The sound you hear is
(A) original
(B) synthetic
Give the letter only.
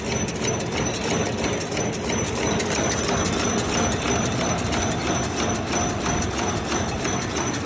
A